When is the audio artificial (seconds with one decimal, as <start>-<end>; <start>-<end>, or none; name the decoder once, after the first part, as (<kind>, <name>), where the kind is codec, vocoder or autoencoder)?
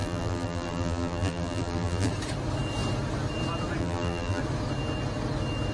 0.0-2.1 (vocoder, BigVGAN v2); 3.8-4.4